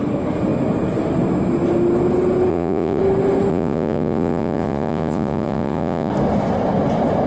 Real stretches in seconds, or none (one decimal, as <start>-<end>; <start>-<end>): 0.0-2.5; 3.0-3.5; 6.1-7.3